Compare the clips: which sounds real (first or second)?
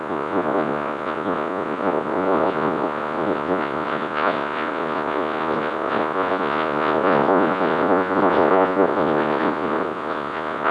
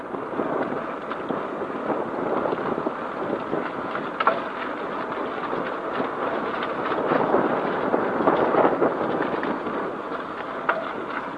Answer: second